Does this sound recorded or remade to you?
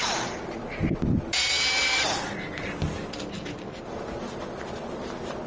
recorded